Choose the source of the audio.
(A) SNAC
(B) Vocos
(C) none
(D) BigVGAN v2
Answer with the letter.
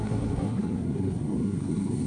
A